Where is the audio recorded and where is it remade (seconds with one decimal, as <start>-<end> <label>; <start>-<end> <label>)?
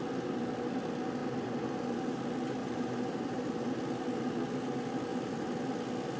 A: 0.0-1.2 recorded; 1.2-2.2 remade; 2.2-2.6 recorded; 2.6-3.4 remade; 3.4-6.2 recorded